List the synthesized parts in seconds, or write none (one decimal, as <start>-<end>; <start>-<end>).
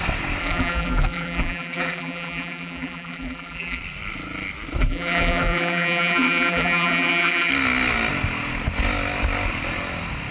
0.4-3.8; 4.8-7.5